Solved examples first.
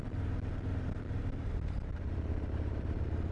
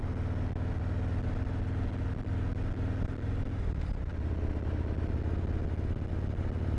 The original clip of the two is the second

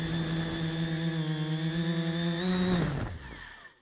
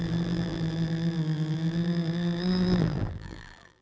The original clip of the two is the first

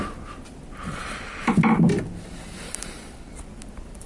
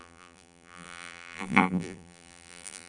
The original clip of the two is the first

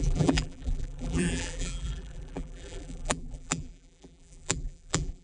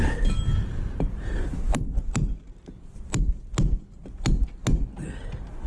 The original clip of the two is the second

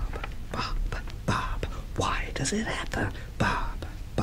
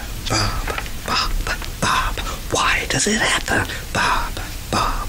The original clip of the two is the first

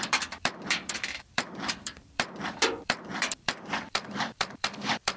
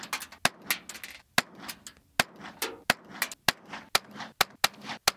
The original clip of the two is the second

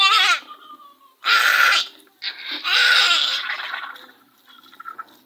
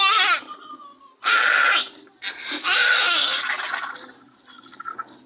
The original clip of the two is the second